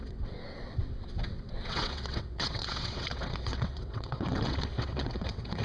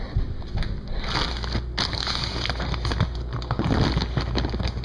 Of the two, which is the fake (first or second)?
first